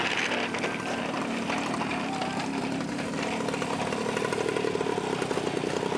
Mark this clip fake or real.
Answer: real